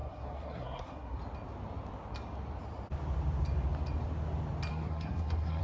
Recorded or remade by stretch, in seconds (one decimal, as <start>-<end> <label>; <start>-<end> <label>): 0.0-1.2 remade; 1.2-4.7 recorded; 4.7-5.6 remade